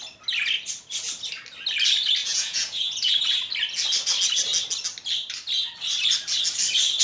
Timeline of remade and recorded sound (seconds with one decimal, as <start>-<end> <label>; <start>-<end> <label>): 0.0-2.2 recorded; 2.2-3.3 remade; 3.3-7.0 recorded